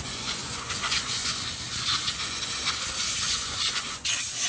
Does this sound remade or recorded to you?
remade